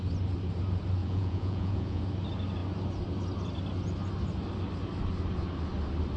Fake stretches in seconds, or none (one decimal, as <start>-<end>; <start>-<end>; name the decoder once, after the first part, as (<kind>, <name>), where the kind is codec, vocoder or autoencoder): 1.0-2.0 (vocoder, Vocos)